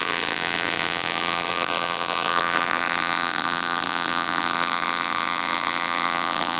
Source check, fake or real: fake